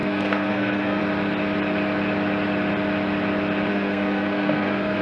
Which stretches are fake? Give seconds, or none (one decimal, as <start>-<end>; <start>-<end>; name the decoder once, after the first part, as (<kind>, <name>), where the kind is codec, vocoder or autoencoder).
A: 0.0-1.0 (codec, SNAC); 3.7-5.0